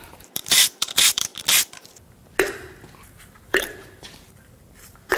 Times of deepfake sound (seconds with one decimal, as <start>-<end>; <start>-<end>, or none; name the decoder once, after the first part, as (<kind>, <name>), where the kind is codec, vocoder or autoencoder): 0.0-1.3 (vocoder, BigVGAN v2); 3.4-5.2